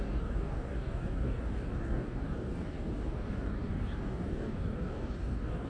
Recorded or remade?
remade